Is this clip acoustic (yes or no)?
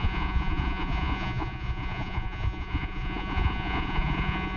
no